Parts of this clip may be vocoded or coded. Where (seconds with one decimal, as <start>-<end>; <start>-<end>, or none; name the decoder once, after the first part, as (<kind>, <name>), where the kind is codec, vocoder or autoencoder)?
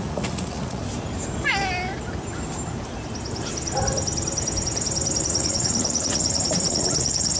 0.0-0.8 (vocoder, Vocos); 5.2-7.4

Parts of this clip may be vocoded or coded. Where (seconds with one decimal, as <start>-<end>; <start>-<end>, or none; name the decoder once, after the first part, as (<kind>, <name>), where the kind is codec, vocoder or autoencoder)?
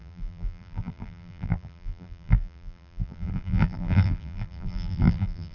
0.0-5.5 (vocoder, BigVGAN v2)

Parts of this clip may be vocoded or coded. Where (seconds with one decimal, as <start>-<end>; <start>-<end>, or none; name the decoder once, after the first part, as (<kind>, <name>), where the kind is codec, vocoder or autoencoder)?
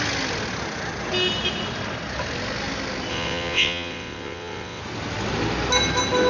3.1-4.8 (vocoder, WaveNeXt)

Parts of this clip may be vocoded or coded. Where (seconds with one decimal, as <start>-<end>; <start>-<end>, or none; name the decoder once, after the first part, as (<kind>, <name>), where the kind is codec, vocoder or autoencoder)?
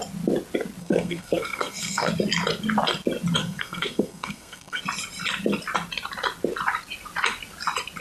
0.8-2.1 (codec, SNAC); 3.4-4.8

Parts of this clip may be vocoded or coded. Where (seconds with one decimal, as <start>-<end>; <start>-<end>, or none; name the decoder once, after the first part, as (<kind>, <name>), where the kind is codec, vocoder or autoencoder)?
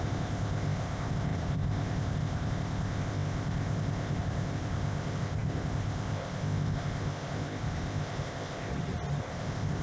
0.0-8.7 (codec, ZipCodec); 9.2-9.8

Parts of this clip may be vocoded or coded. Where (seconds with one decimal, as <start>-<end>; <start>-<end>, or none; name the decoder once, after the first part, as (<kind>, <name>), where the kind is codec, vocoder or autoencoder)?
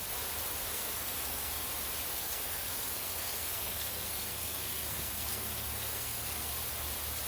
0.7-1.5 (codec, SNAC); 2.1-6.5